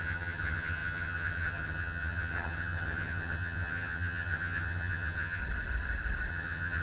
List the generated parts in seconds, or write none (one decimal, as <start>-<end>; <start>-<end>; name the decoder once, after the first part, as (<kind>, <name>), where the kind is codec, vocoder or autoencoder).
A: 0.0-5.4 (vocoder, HiFi-GAN); 6.3-6.8